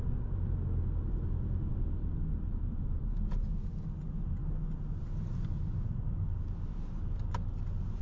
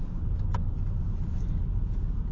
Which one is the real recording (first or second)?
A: first